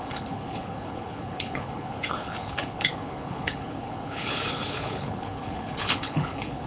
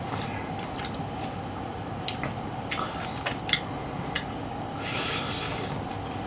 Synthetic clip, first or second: first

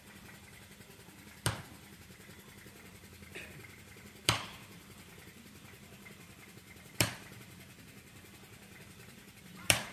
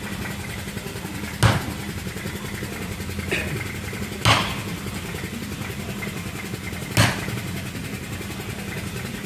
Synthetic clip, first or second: first